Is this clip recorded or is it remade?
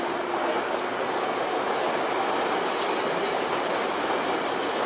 recorded